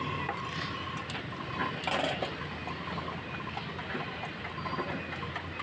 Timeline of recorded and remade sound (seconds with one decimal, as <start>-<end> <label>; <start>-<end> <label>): 0.0-5.6 recorded